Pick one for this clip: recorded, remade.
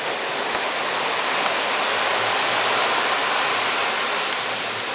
recorded